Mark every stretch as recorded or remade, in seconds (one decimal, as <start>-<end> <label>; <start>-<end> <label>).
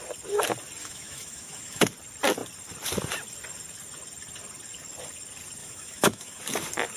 0.0-0.8 recorded; 0.8-1.8 remade; 1.8-5.6 recorded; 5.6-6.4 remade; 6.4-7.0 recorded